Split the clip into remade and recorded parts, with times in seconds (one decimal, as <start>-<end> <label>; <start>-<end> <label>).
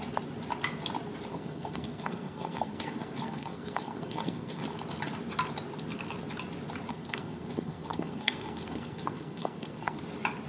0.0-1.3 recorded; 1.3-4.6 remade; 4.6-6.9 recorded; 6.9-10.0 remade; 10.0-10.5 recorded